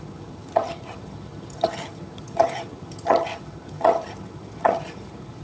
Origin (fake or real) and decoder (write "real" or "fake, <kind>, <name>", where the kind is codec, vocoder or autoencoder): fake, vocoder, HiFi-GAN